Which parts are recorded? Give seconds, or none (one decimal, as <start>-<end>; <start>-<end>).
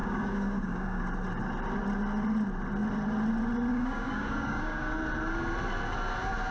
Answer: 1.0-3.7; 4.9-6.5